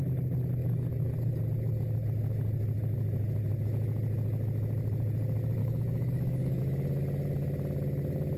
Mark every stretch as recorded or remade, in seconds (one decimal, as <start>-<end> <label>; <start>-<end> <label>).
0.0-0.6 recorded; 0.6-1.4 remade; 1.4-5.6 recorded; 5.6-6.6 remade; 6.6-8.4 recorded